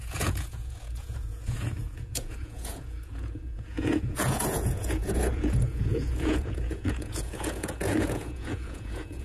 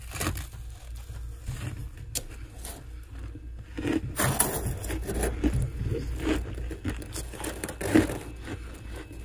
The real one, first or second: second